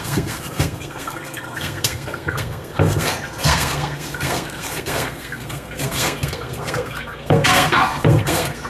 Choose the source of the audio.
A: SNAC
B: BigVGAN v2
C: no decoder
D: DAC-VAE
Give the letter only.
A